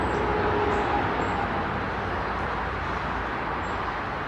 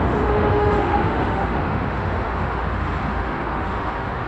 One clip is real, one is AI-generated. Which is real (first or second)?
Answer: first